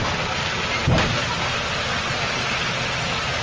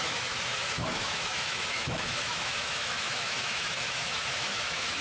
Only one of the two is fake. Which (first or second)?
second